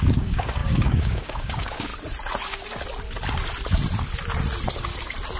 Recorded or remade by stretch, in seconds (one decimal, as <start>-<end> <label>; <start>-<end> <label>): 0.0-1.9 remade; 1.9-5.4 recorded